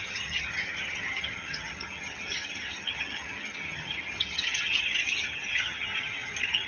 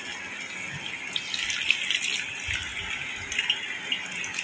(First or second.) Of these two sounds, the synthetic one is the first